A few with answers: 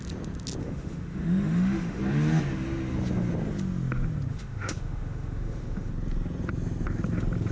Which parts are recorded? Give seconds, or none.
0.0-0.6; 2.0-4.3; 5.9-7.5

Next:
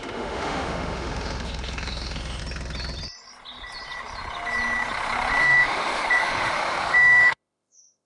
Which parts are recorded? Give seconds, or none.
2.4-5.4

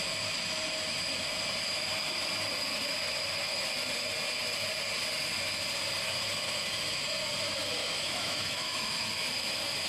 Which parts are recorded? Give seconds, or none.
0.0-7.8; 9.1-9.9